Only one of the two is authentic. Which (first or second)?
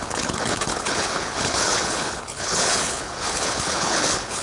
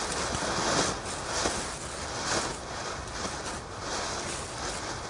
second